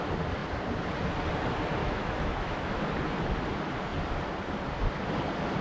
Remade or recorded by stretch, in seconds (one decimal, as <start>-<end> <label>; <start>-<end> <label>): 0.0-1.8 recorded; 1.8-2.8 remade; 2.8-5.6 recorded